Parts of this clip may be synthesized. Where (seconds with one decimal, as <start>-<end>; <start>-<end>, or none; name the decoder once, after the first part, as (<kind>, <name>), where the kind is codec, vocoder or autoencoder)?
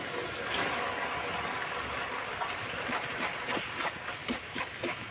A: 4.2-5.1 (autoencoder, DAC-VAE)